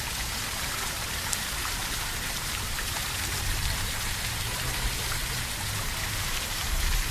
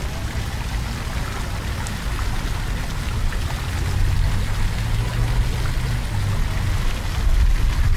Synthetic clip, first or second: first